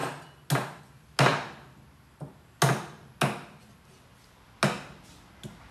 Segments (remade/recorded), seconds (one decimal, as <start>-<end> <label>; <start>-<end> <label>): 0.0-5.7 recorded